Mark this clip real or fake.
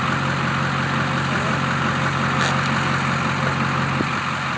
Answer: real